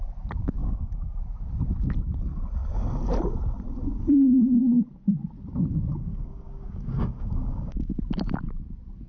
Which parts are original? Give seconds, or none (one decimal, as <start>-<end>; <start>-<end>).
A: 0.0-0.6; 1.2-5.9; 7.9-9.1